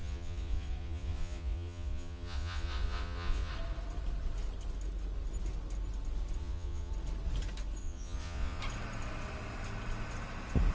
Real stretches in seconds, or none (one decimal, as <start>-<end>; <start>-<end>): 3.5-6.4; 6.9-7.8; 8.6-10.7